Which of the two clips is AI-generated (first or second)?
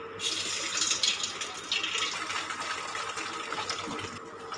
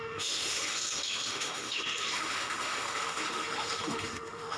second